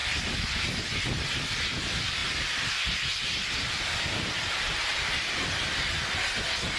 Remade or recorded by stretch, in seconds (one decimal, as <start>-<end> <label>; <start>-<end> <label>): 0.0-1.0 remade; 1.0-2.2 recorded; 2.2-2.7 remade; 2.7-4.9 recorded; 4.9-5.6 remade; 5.6-6.8 recorded